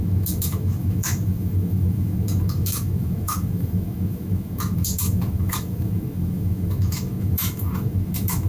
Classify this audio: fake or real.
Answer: fake